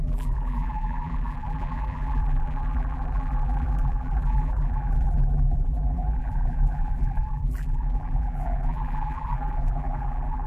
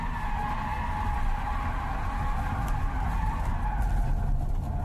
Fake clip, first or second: first